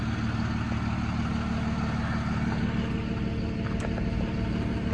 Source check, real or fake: real